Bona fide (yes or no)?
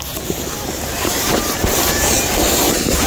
no